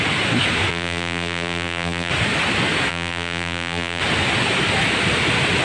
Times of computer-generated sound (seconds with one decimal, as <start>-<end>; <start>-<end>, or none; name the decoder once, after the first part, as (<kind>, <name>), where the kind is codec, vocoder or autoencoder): 0.7-2.1 (vocoder, BigVGAN v2); 2.9-4.0